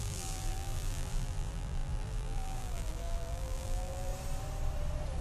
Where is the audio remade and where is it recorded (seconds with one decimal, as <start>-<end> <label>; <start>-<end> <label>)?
0.0-4.1 remade; 4.1-5.2 recorded